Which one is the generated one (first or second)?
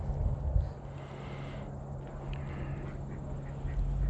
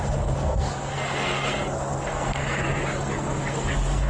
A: second